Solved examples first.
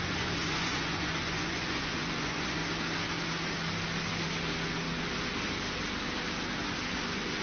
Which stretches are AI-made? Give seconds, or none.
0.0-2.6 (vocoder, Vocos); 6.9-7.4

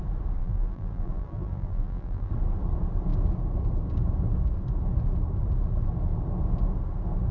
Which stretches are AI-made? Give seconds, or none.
0.4-2.3 (vocoder, BigVGAN v2)